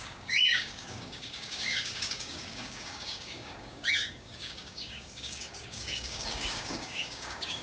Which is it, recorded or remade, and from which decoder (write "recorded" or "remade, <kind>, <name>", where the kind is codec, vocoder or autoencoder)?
remade, codec, DAC